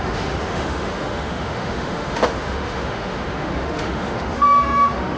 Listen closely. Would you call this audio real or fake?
fake